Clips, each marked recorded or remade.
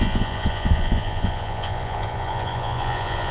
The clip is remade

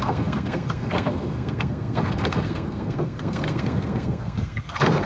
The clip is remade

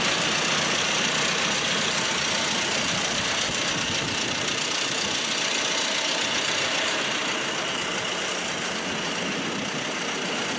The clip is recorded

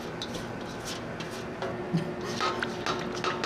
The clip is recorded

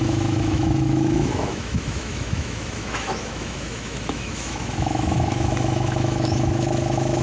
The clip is remade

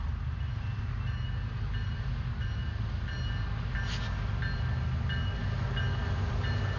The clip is recorded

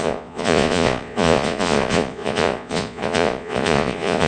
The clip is remade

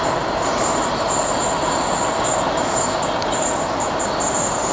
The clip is recorded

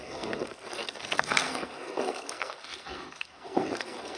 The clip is remade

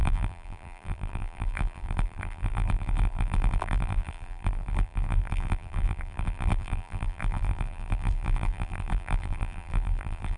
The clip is remade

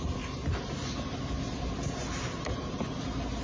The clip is remade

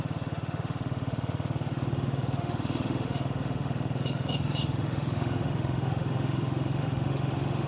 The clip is remade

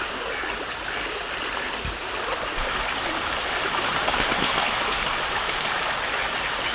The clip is recorded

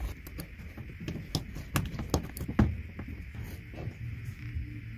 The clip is recorded